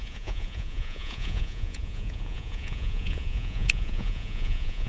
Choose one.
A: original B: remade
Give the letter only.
B